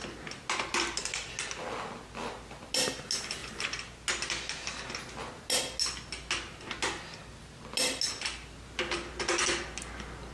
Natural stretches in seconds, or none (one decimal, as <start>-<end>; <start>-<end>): 0.0-10.3